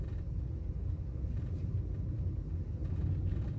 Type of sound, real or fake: real